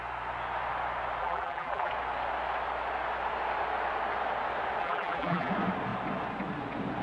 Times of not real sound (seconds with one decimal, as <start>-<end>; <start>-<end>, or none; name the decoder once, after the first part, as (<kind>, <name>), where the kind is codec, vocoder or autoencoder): 1.2-1.9 (vocoder, BigVGAN v2); 4.8-5.5